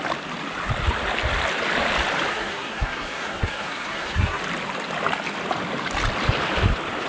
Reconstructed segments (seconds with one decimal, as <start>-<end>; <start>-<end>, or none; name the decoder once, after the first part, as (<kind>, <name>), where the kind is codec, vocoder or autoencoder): 2.3-4.4 (codec, SNAC)